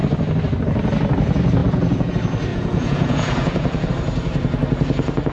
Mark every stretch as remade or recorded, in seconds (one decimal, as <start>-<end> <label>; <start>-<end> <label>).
0.0-1.6 recorded; 1.6-2.1 remade; 2.1-2.5 recorded; 2.5-3.9 remade; 3.9-5.3 recorded